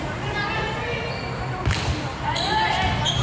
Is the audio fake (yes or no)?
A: no